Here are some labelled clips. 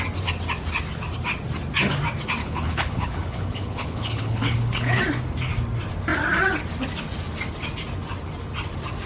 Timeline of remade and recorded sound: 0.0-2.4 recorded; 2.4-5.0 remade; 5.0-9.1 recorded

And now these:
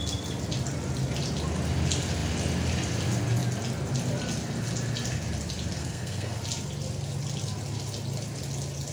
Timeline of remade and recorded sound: 0.0-5.8 recorded; 5.8-6.4 remade; 6.4-8.9 recorded

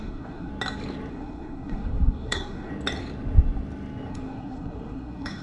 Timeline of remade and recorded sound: 0.0-0.5 remade; 0.5-1.1 recorded; 1.1-2.7 remade; 2.7-4.1 recorded; 4.1-5.4 remade

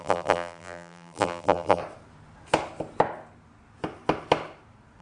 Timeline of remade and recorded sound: 0.0-1.8 remade; 1.8-5.0 recorded

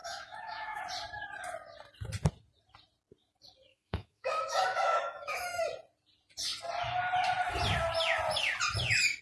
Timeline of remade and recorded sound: 0.0-0.8 remade; 0.8-3.7 recorded; 3.7-5.6 remade; 5.6-9.2 recorded

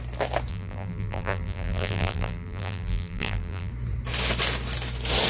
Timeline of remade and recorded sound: 0.0-0.5 recorded; 0.5-3.7 remade; 3.7-5.3 recorded